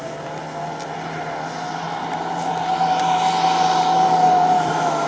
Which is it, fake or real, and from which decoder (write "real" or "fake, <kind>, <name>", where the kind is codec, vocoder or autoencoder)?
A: real